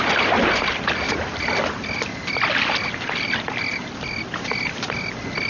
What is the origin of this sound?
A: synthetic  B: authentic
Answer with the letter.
B